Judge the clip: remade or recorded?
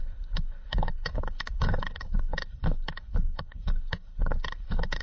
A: remade